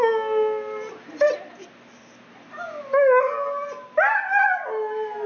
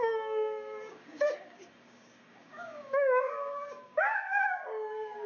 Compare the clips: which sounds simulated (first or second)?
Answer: second